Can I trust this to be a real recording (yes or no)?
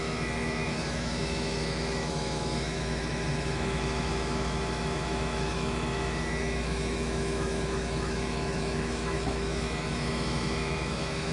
no